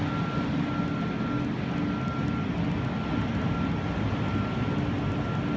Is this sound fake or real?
real